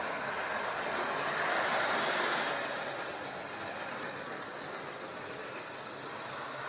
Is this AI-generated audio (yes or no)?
no